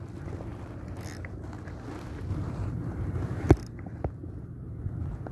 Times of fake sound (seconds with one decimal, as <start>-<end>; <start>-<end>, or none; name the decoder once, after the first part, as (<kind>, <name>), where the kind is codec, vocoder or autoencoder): 2.3-3.5 (vocoder, BigVGAN v2); 4.2-5.3

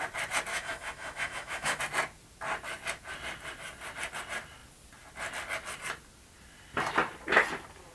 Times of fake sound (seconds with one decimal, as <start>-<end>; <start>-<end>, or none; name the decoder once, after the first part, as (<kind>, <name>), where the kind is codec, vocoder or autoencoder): 0.5-1.8 (autoencoder, DAC-VAE)

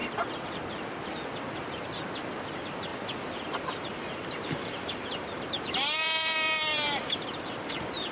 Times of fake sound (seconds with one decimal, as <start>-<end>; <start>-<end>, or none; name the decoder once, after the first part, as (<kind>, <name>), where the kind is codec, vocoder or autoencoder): 2.5-8.1 (vocoder, BigVGAN v2)

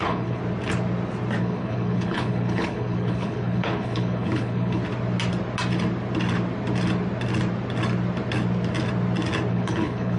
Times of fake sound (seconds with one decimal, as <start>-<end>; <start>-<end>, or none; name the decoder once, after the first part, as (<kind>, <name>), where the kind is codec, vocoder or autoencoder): 0.0-0.4 (codec, HILCodec); 1.4-4.8; 9.5-10.2

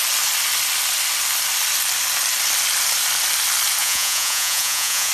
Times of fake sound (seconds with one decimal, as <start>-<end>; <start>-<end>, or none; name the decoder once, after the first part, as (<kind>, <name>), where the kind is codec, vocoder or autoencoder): 3.8-5.1 (vocoder, Vocos)

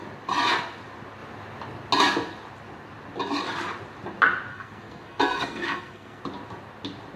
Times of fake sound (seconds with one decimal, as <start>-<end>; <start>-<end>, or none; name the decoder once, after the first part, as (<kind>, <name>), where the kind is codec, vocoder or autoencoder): 4.5-6.2 (codec, SNAC)

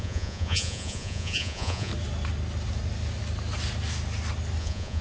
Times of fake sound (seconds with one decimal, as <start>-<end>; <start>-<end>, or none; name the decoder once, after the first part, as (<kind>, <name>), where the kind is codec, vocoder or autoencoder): 0.0-1.9 (vocoder, Vocos); 4.6-5.0